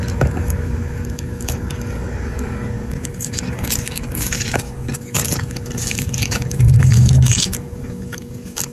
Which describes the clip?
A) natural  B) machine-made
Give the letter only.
B